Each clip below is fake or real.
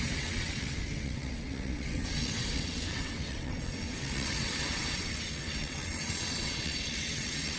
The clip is fake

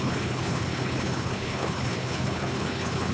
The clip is fake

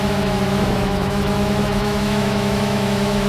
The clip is fake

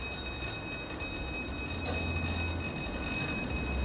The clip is real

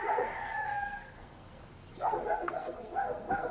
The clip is fake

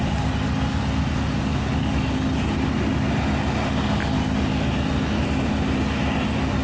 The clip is real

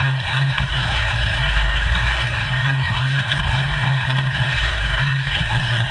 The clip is fake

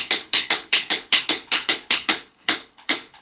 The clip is fake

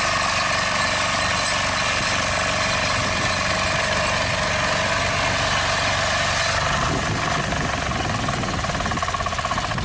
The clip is real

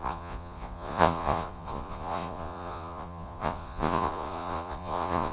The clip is fake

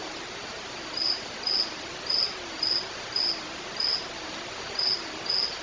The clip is real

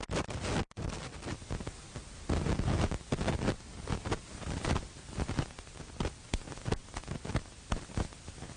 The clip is real